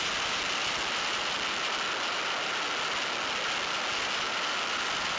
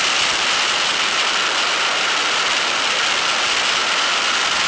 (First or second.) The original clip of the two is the first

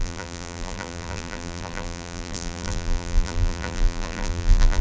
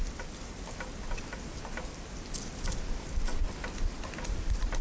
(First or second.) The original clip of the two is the second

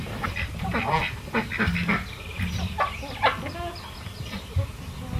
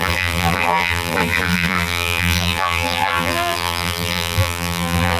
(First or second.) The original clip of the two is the first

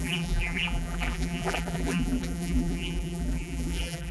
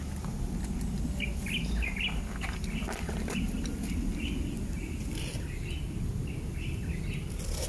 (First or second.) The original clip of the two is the second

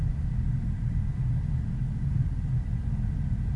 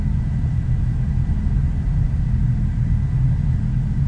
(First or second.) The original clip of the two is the second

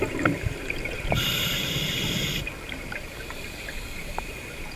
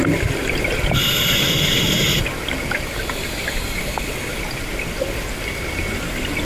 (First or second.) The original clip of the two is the second